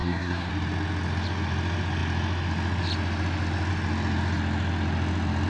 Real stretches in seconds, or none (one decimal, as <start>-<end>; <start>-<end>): 0.5-5.5